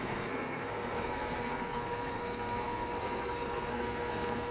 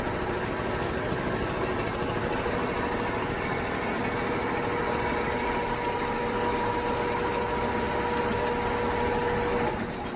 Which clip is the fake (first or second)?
first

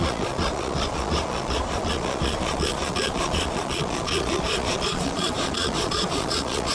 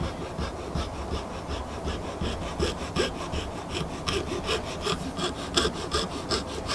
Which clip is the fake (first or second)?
first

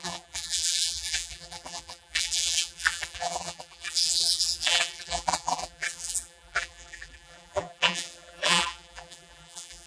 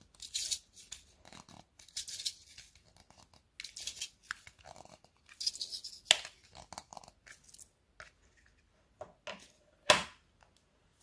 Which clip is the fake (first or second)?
first